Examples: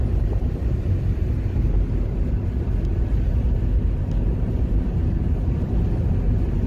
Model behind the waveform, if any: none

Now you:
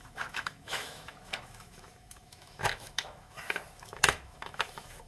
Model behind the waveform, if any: autoencoder, DAC-VAE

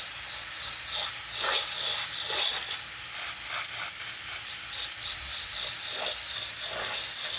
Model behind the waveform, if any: none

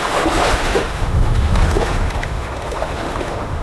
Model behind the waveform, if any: autoencoder, DAC-VAE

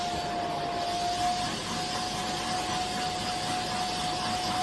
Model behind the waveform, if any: none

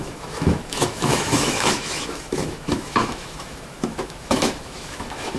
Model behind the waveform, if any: autoencoder, DAC-VAE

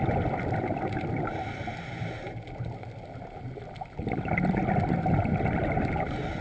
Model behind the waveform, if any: none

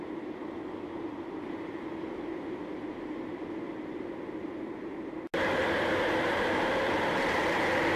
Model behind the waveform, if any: none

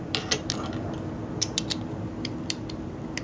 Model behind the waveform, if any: none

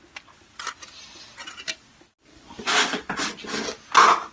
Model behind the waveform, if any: none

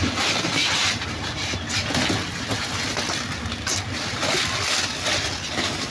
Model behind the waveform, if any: none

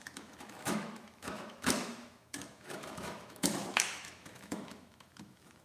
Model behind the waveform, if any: autoencoder, DAC-VAE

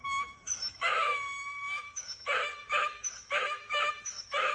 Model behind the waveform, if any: autoencoder, DAC-VAE